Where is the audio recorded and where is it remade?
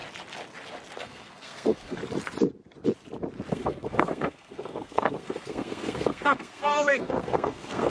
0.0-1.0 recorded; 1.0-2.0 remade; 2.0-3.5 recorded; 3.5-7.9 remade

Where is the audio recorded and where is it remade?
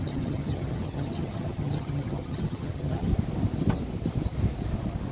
0.0-3.1 remade; 3.1-5.1 recorded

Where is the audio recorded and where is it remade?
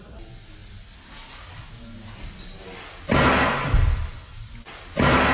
0.0-5.3 recorded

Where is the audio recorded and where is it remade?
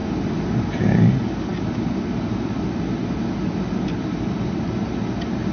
0.0-5.5 recorded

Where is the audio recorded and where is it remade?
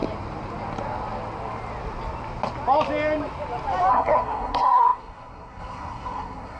0.0-3.9 recorded; 3.9-6.6 remade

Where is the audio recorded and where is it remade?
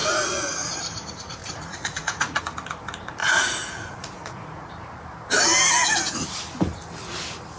0.0-0.8 remade; 0.8-1.4 recorded; 1.4-2.4 remade; 2.4-3.2 recorded; 3.2-4.7 remade; 4.7-7.6 recorded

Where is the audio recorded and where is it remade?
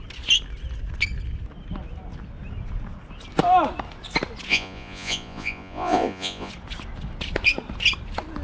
0.0-4.5 recorded; 4.5-6.5 remade; 6.5-8.4 recorded